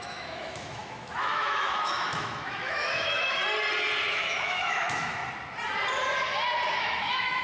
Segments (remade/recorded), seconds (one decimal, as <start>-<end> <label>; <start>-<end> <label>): 0.0-3.4 remade; 3.4-4.1 recorded; 4.1-5.2 remade; 5.2-6.8 recorded; 6.8-7.4 remade